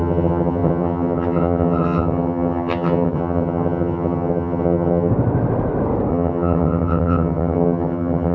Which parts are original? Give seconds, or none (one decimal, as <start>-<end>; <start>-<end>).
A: 5.1-6.1